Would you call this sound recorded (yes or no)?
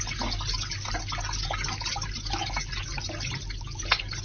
yes